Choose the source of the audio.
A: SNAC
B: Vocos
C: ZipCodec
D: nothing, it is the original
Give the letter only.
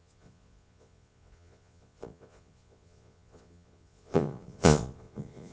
B